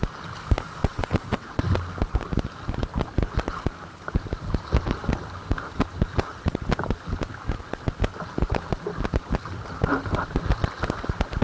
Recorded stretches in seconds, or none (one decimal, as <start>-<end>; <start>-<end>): 0.0-0.8; 1.6-11.4